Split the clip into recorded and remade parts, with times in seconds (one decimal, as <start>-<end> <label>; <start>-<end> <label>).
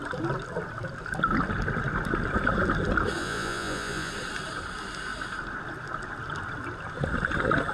0.0-3.2 recorded; 3.2-4.1 remade; 4.1-7.7 recorded